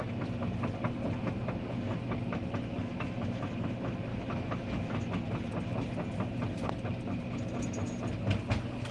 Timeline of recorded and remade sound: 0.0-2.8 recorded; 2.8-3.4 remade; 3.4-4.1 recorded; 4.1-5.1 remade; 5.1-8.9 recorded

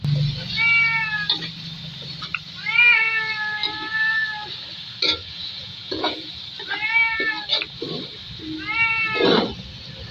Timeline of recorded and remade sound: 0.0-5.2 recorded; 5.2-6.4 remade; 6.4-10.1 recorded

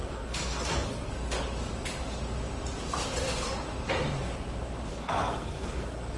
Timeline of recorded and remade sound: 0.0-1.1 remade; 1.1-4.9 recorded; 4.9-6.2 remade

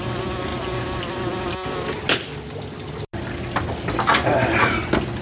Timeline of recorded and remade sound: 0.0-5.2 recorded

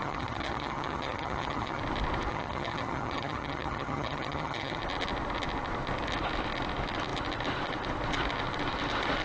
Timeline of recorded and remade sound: 0.0-1.8 remade; 1.8-2.3 recorded; 2.3-4.8 remade; 4.8-9.2 recorded

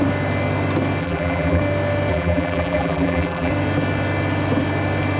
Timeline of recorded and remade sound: 0.0-1.0 recorded; 1.0-1.6 remade; 1.6-2.1 recorded; 2.1-3.5 remade; 3.5-5.2 recorded